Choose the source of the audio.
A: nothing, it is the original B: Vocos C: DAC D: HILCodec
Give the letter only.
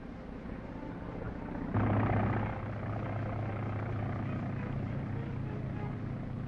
A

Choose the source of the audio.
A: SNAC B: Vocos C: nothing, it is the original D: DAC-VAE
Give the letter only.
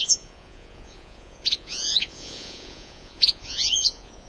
B